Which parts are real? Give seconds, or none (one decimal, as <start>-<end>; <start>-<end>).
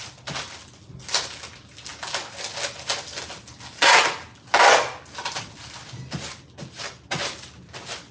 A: 0.0-8.1